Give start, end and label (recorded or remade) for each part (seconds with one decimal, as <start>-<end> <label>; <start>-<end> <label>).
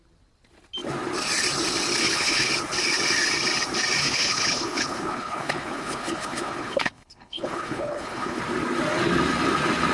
0.0-2.0 recorded; 2.0-2.5 remade; 2.5-4.0 recorded; 4.0-8.4 remade; 8.4-9.9 recorded